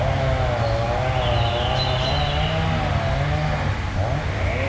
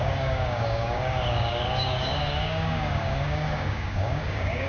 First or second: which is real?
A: first